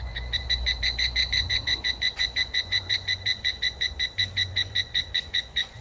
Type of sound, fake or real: fake